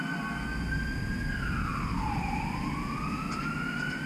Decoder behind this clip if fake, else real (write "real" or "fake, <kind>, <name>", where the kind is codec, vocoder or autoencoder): real